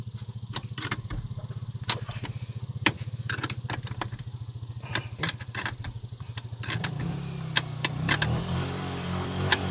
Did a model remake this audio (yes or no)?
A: yes